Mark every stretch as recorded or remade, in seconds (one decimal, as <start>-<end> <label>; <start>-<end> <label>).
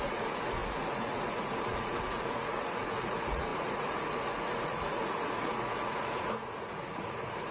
0.0-7.5 remade